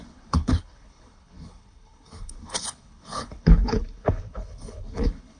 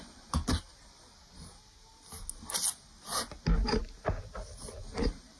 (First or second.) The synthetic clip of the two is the first